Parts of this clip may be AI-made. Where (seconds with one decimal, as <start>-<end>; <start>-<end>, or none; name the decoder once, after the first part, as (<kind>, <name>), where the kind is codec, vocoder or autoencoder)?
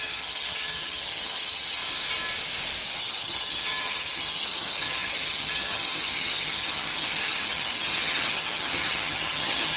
0.0-1.8 (vocoder, HiFi-GAN); 3.0-9.8